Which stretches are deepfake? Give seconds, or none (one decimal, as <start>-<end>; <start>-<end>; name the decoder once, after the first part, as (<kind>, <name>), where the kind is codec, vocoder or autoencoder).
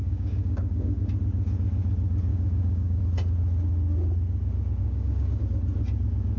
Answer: 0.0-1.0 (codec, DAC); 2.3-3.0; 4.8-5.4